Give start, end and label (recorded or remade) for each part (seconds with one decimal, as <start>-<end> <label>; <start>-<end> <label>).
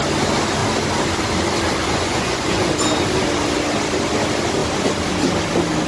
0.0-1.8 recorded; 1.8-2.7 remade; 2.7-5.9 recorded